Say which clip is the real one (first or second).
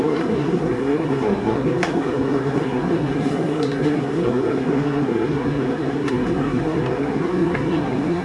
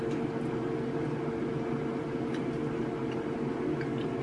second